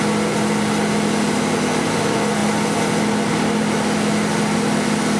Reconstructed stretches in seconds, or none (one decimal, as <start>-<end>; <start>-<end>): none